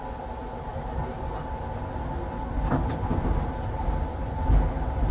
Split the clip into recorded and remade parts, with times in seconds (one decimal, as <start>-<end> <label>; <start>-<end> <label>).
0.0-5.1 recorded